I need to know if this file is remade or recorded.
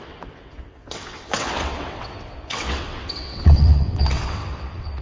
remade